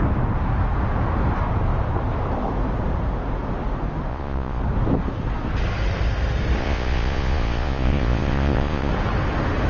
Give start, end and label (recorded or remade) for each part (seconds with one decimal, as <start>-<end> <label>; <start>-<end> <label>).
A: 0.0-4.1 recorded; 4.1-4.6 remade; 4.6-6.6 recorded; 6.6-8.9 remade; 8.9-9.7 recorded